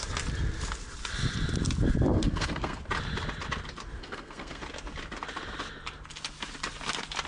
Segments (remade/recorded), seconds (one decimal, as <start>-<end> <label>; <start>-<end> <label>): 0.0-2.1 recorded; 2.1-2.8 remade; 2.8-4.0 recorded; 4.0-4.6 remade; 4.6-7.3 recorded